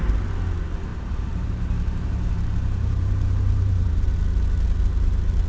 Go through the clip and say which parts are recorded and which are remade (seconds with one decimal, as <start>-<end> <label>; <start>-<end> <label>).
0.0-0.9 recorded; 0.9-4.2 remade; 4.2-5.5 recorded